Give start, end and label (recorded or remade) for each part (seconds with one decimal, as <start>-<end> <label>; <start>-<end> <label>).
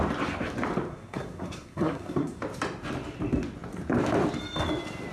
0.0-0.9 recorded; 0.9-2.4 remade; 2.4-5.1 recorded